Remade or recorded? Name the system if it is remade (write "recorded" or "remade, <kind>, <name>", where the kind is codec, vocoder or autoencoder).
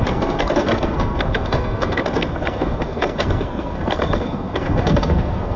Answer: remade, codec, SNAC